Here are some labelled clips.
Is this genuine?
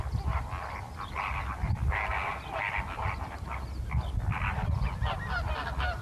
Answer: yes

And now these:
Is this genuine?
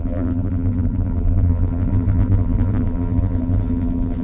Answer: no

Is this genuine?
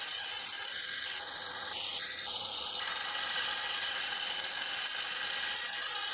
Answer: yes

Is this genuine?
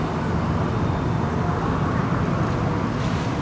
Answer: yes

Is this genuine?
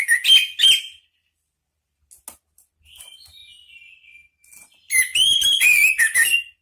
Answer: yes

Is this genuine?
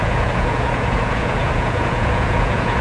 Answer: no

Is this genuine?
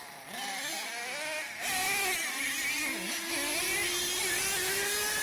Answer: yes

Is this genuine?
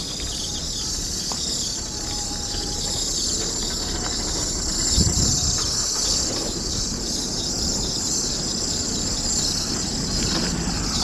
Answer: yes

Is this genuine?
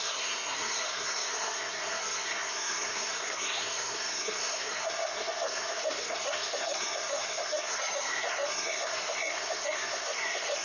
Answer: no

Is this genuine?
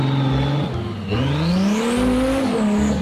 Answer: yes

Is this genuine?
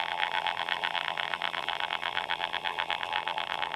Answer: no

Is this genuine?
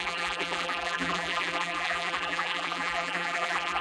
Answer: no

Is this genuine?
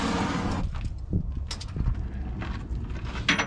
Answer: yes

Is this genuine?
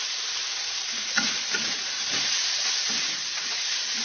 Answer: no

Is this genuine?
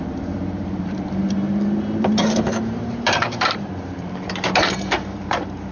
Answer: no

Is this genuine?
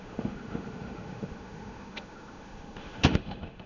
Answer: no